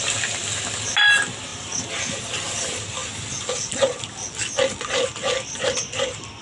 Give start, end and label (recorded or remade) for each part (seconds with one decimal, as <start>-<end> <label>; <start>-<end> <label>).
0.0-6.4 recorded

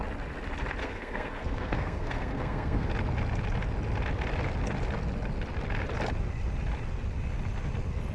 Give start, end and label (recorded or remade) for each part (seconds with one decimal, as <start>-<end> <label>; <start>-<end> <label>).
0.0-0.8 recorded; 0.8-2.9 remade; 2.9-8.1 recorded

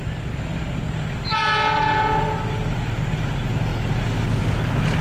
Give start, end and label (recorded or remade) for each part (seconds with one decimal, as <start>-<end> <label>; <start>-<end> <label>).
0.0-5.0 recorded

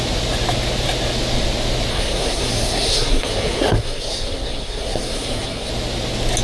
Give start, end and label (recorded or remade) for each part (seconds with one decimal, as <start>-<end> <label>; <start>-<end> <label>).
0.0-1.9 recorded; 1.9-5.7 remade; 5.7-6.4 recorded

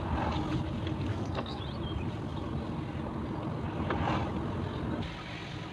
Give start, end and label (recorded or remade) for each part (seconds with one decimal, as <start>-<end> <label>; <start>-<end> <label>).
0.0-1.1 recorded; 1.1-1.6 remade; 1.6-5.7 recorded

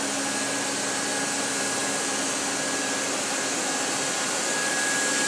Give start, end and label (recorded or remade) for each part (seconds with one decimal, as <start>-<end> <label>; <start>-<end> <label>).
0.0-5.3 recorded

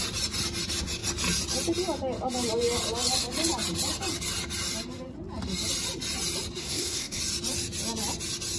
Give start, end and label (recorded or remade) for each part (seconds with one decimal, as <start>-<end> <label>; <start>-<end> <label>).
0.0-6.6 recorded; 6.6-7.2 remade; 7.2-8.6 recorded